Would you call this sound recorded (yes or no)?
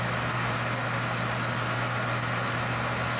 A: yes